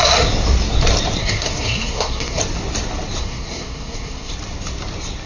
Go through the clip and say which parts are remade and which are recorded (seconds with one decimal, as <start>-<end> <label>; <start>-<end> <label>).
0.0-1.2 recorded; 1.2-2.4 remade; 2.4-3.2 recorded; 3.2-4.3 remade; 4.3-5.3 recorded